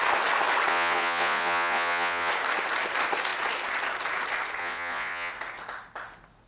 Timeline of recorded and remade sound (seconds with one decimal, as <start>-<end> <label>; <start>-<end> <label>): 0.0-0.7 recorded; 0.7-2.3 remade; 2.3-4.6 recorded; 4.6-5.3 remade; 5.3-6.5 recorded